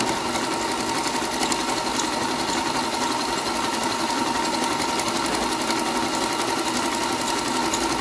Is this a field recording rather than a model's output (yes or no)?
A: yes